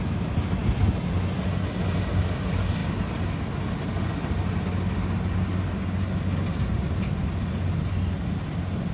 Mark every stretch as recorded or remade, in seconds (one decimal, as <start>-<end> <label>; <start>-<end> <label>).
0.0-8.9 recorded